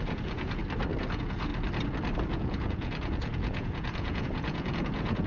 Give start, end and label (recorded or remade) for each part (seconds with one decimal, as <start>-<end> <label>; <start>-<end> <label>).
0.0-0.6 remade; 0.6-1.1 recorded; 1.1-1.5 remade; 1.5-2.2 recorded; 2.2-5.3 remade